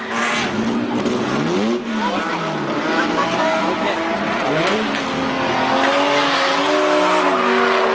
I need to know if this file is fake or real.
real